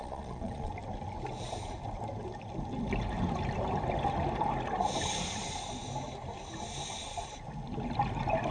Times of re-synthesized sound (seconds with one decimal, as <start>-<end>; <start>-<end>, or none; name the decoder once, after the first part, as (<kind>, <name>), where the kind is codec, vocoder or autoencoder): 0.0-0.7 (vocoder, Vocos)